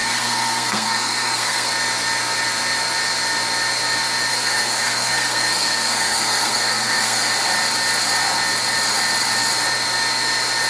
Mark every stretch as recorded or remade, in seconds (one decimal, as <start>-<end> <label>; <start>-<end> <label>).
0.0-1.7 remade; 1.7-4.3 recorded; 4.3-7.3 remade; 7.3-10.7 recorded